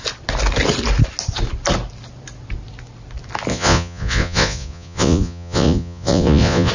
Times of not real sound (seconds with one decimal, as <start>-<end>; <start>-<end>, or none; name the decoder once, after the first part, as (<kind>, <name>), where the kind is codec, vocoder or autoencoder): 3.5-6.7 (vocoder, Vocos)